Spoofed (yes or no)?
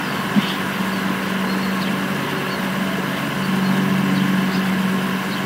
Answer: no